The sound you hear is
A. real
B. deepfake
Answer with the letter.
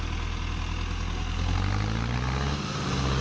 A